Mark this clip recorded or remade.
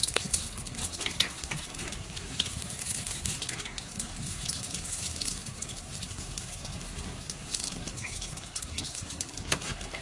remade